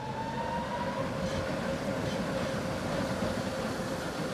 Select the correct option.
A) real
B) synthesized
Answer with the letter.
A